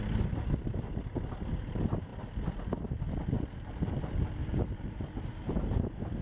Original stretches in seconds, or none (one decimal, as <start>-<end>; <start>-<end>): 0.0-4.4; 5.6-6.2